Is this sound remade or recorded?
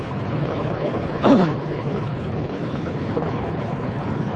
remade